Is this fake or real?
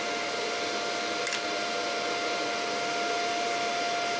real